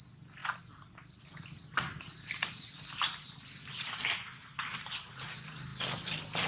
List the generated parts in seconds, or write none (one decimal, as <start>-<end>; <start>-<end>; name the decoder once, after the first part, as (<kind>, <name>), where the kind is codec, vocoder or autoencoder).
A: none